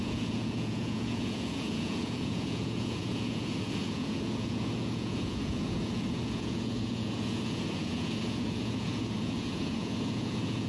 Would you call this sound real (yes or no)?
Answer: no